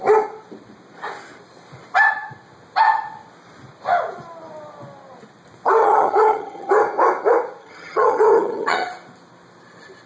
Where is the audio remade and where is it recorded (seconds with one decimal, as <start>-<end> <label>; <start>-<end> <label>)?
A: 0.0-5.8 recorded; 5.8-6.7 remade; 6.7-7.6 recorded; 7.6-8.9 remade; 8.9-10.1 recorded